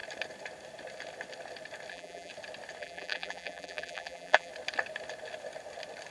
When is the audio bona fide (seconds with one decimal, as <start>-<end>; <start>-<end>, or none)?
0.0-1.9; 2.3-2.8; 4.5-6.1